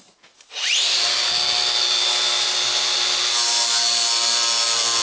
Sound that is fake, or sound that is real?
real